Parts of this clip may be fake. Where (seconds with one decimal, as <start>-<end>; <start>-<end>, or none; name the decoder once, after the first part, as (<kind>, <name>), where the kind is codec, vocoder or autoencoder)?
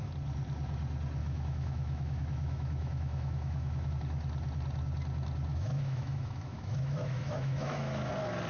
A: 1.2-3.9 (autoencoder, DAC-VAE); 5.5-8.1